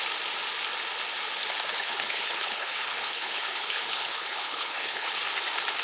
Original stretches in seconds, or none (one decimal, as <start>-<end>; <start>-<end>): 0.0-1.7; 5.2-5.8